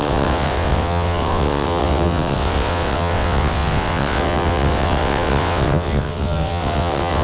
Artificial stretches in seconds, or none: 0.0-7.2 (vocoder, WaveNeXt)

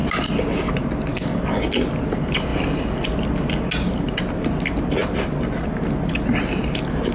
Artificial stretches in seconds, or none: 1.1-1.7 (codec, DAC)

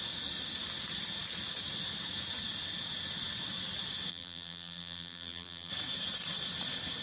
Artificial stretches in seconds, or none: 4.1-5.7 (vocoder, BigVGAN v2)

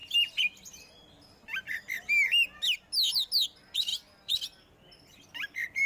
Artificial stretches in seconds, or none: none

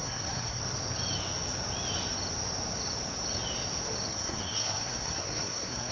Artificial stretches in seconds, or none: 0.0-0.6 (codec, SNAC); 4.1-5.9

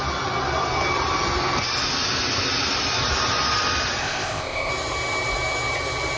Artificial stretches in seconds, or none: 4.0-4.7 (codec, ZipCodec)